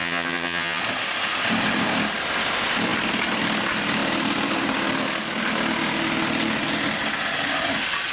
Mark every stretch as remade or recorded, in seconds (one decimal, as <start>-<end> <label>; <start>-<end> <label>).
0.0-0.8 remade; 0.8-8.1 recorded